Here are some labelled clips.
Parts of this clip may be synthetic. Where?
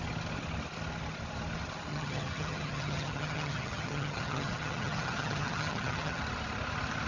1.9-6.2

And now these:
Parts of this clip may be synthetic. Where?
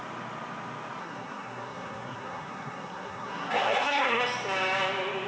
1.0-4.2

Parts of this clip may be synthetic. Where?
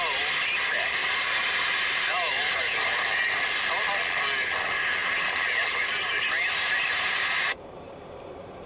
1.0-3.3; 5.0-8.7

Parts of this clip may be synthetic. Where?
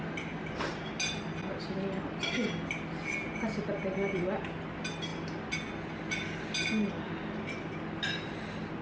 none